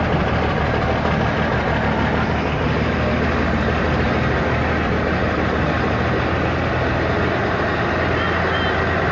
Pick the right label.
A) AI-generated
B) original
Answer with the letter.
B